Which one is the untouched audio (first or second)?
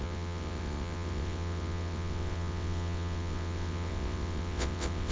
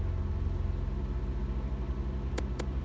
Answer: second